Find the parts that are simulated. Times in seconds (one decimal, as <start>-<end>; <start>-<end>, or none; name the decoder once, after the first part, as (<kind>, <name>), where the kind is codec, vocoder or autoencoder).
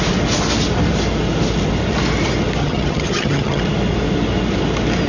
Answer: 2.6-3.6 (vocoder, HiFi-GAN)